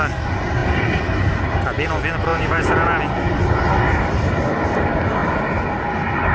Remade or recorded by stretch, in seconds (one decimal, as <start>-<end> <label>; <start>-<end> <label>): 0.0-2.3 recorded; 2.3-3.0 remade; 3.0-6.3 recorded